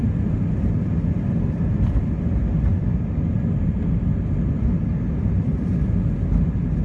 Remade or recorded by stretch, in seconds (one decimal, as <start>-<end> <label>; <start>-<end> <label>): 0.0-6.8 recorded